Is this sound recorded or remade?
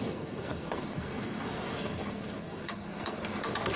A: remade